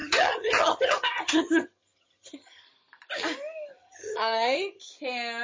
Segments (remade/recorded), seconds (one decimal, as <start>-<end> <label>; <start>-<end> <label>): 0.0-2.6 remade; 2.6-3.8 recorded; 3.8-4.8 remade; 4.8-5.4 recorded